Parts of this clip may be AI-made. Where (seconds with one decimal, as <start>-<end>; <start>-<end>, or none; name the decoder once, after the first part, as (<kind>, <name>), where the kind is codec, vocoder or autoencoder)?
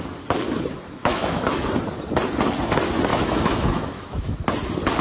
1.0-1.7 (autoencoder, DAC-VAE); 3.1-4.4